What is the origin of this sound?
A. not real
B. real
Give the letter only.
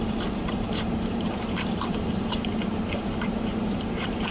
A